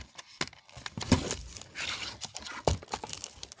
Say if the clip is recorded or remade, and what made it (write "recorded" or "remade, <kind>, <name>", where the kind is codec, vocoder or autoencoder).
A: recorded